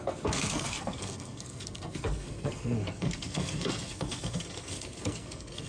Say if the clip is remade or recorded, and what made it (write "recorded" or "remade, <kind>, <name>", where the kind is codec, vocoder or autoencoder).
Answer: remade, codec, SNAC